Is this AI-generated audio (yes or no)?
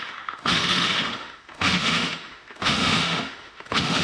yes